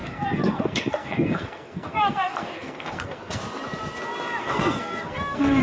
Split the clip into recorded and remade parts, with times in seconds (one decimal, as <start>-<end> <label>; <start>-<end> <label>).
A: 0.0-3.4 remade; 3.4-4.4 recorded; 4.4-5.6 remade